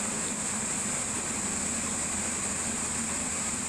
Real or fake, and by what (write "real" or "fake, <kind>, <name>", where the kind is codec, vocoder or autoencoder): real